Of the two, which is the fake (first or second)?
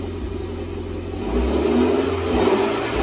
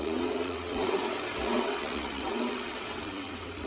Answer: second